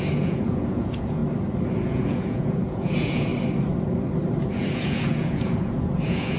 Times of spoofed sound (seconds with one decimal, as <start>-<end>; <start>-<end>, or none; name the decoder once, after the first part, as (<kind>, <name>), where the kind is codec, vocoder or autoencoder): 0.0-1.2 (vocoder, Vocos); 1.9-3.3; 4.7-6.4